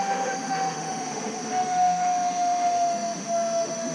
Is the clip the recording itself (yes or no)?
no